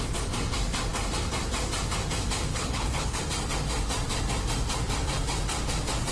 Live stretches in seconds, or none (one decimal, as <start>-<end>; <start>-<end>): 0.0-2.5; 3.2-6.1